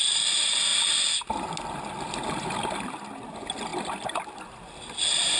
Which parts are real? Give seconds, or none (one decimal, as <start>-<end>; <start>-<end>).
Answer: 0.0-5.4